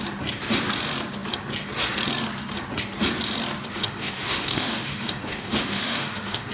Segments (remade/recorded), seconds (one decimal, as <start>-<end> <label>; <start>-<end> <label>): 0.0-3.7 recorded; 3.7-6.5 remade

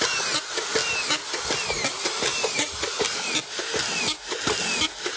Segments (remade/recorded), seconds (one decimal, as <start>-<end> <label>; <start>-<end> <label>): 0.0-5.2 recorded

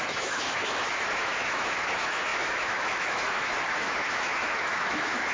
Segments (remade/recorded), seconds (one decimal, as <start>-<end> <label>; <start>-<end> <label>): 0.0-5.3 remade

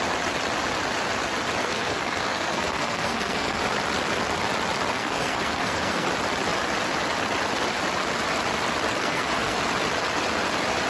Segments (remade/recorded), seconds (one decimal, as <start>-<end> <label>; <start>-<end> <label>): 0.0-1.6 recorded; 1.6-3.6 remade; 3.6-4.9 recorded; 4.9-6.1 remade; 6.1-8.9 recorded; 8.9-9.6 remade; 9.6-10.9 recorded

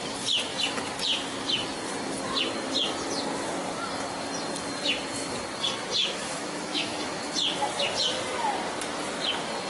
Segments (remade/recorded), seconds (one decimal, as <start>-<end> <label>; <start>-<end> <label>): 0.0-6.0 recorded; 6.0-7.3 remade; 7.3-9.7 recorded

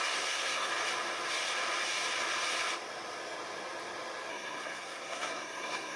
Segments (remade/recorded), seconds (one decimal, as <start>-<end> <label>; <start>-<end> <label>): 0.0-0.7 remade; 0.7-4.3 recorded; 4.3-6.0 remade

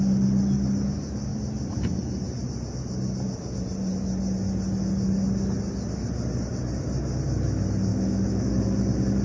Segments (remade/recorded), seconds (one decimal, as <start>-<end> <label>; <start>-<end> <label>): 0.0-7.9 recorded; 7.9-8.5 remade; 8.5-9.2 recorded

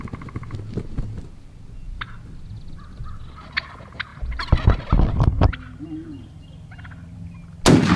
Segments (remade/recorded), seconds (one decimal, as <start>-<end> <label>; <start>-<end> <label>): 0.0-8.0 recorded